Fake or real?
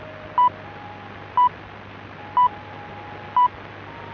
real